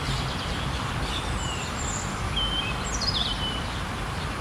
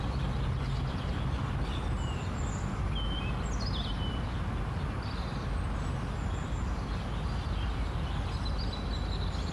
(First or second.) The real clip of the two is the second